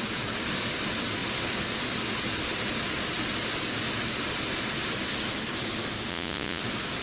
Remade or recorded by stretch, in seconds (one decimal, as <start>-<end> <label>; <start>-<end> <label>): 0.0-6.1 recorded; 6.1-6.6 remade; 6.6-7.0 recorded